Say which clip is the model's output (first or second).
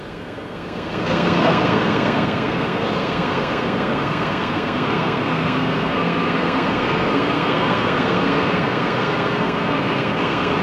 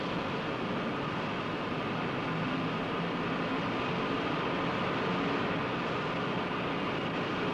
first